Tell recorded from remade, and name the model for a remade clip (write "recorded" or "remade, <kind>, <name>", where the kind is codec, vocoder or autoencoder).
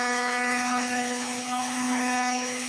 remade, codec, HILCodec